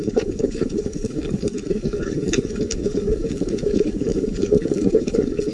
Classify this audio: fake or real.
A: fake